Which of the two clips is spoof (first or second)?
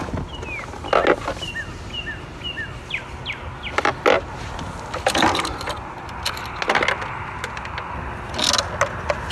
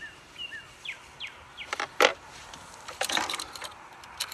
second